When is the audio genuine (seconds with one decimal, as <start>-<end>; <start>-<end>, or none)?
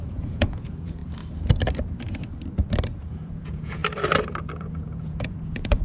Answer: 1.0-3.0; 3.8-4.5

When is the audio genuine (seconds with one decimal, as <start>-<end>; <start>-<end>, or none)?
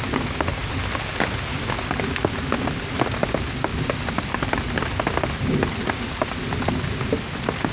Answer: 0.0-7.7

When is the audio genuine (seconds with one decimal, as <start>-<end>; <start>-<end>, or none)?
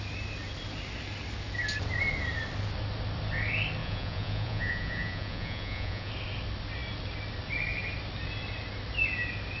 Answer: 0.0-3.8; 6.1-9.6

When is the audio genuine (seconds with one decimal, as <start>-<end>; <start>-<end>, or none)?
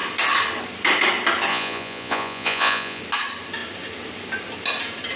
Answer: 0.0-1.5; 3.0-5.2